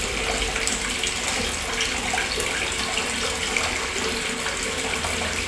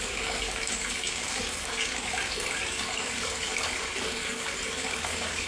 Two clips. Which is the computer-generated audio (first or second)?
second